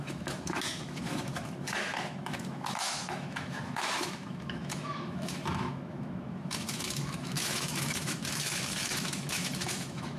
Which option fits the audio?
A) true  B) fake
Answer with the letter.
B